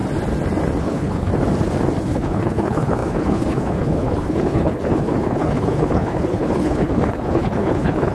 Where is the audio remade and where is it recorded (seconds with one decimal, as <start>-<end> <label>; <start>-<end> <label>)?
0.0-0.8 recorded; 0.8-1.3 remade; 1.3-2.0 recorded; 2.0-8.1 remade

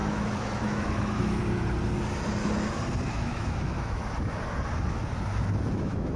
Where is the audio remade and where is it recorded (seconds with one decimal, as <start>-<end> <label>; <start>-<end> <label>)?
0.0-1.4 remade; 1.4-3.1 recorded; 3.1-4.0 remade; 4.0-5.7 recorded; 5.7-6.2 remade

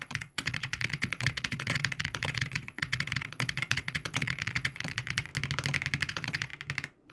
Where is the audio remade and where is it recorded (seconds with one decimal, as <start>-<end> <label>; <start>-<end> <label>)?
0.0-5.3 remade; 5.3-6.1 recorded; 6.1-6.5 remade; 6.5-7.1 recorded

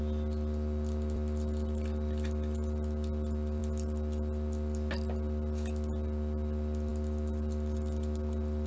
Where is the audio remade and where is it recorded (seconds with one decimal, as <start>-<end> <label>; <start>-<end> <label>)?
0.0-8.7 recorded

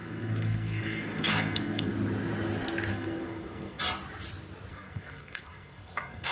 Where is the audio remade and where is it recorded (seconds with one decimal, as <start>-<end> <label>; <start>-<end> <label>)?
0.0-1.9 remade; 1.9-2.9 recorded; 2.9-3.8 remade; 3.8-4.7 recorded; 4.7-6.3 remade

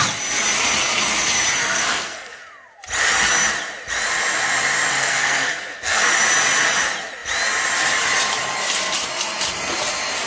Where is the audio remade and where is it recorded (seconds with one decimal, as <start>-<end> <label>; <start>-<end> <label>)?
0.0-1.6 recorded; 1.6-2.4 remade; 2.4-4.9 recorded; 4.9-6.1 remade; 6.1-10.3 recorded